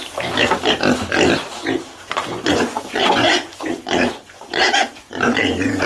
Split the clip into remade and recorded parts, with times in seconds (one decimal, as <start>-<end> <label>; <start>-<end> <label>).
0.0-2.3 recorded; 2.3-5.9 remade